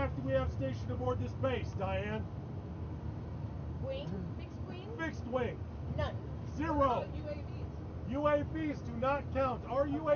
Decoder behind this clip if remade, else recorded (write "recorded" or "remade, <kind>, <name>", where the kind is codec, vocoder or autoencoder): recorded